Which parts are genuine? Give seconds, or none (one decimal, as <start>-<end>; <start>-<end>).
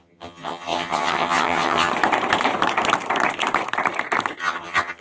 1.9-4.4